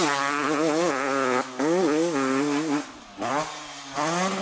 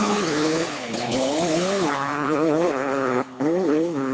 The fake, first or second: second